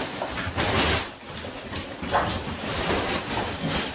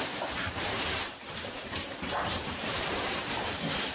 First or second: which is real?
first